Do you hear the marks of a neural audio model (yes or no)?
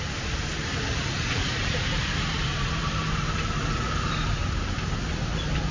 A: no